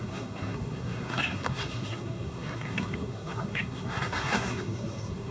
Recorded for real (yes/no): no